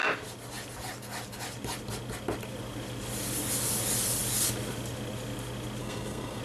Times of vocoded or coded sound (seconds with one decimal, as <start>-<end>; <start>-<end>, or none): 5.8-6.4